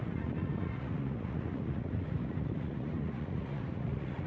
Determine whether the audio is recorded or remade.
remade